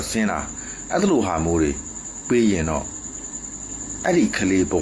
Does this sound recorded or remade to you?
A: remade